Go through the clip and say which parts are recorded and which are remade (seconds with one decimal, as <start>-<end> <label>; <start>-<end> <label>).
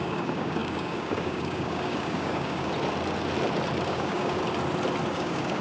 0.0-2.7 remade; 2.7-3.9 recorded; 3.9-4.4 remade; 4.4-5.1 recorded; 5.1-5.6 remade